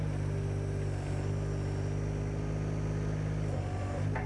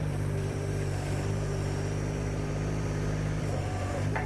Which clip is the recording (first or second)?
first